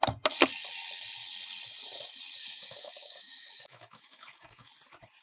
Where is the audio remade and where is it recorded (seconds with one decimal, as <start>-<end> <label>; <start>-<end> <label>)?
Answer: 0.0-2.4 recorded; 2.4-4.7 remade; 4.7-5.2 recorded